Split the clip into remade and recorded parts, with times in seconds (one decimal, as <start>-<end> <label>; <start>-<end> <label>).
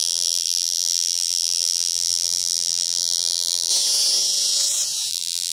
0.0-3.7 remade; 3.7-5.1 recorded; 5.1-5.5 remade